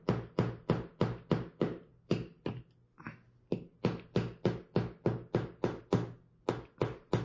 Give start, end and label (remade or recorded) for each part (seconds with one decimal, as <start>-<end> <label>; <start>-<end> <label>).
0.0-7.2 recorded